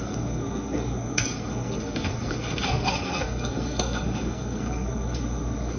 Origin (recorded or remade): remade